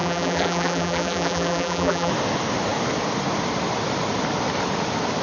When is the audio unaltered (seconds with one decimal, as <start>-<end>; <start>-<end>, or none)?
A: 2.1-5.2